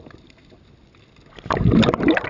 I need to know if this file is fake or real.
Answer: real